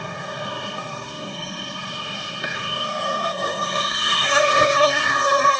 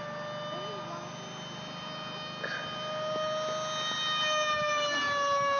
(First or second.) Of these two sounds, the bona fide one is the second